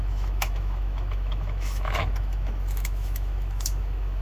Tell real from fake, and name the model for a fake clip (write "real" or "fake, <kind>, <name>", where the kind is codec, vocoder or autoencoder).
fake, autoencoder, DAC-VAE